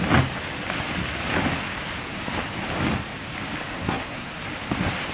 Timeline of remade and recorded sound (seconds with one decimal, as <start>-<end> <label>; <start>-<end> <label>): 0.0-3.7 recorded; 3.7-4.3 remade; 4.3-5.1 recorded

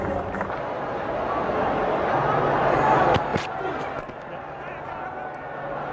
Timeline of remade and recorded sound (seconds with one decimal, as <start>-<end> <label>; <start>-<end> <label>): 0.0-5.9 recorded

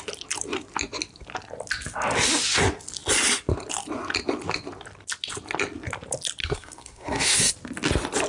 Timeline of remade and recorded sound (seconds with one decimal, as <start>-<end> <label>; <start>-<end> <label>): 0.0-6.4 recorded; 6.4-7.5 remade; 7.5-8.3 recorded

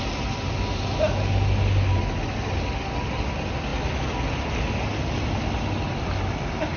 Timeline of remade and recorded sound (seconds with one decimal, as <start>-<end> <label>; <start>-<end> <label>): 0.0-6.8 recorded